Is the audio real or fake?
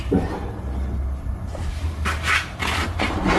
real